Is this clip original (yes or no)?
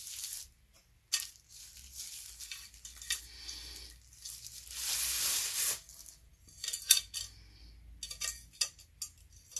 yes